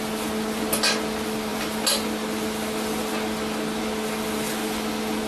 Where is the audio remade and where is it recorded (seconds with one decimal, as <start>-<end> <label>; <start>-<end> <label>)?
0.0-5.3 recorded